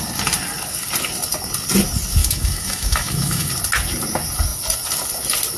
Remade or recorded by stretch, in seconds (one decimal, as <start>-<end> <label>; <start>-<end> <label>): 0.0-2.2 recorded; 2.2-3.5 remade; 3.5-5.6 recorded